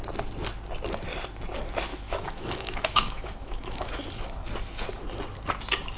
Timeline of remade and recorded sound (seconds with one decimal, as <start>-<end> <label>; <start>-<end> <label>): 0.0-1.9 recorded; 1.9-3.9 remade; 3.9-6.0 recorded